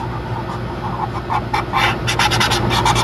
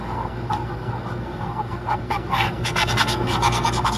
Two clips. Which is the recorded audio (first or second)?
first